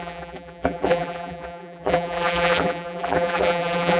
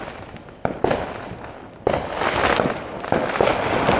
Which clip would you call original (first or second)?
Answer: second